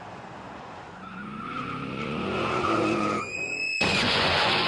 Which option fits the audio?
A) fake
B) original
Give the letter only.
A